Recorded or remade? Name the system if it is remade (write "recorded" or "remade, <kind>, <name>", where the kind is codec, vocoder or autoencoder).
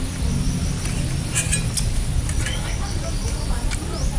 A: recorded